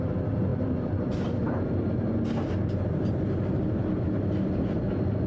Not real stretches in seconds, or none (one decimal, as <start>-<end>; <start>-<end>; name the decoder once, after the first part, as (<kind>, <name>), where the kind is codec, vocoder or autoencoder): none